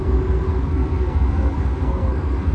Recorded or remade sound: remade